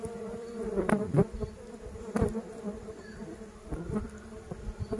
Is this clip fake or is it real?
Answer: real